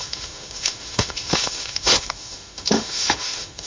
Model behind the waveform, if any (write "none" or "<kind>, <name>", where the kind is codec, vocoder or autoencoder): autoencoder, DAC-VAE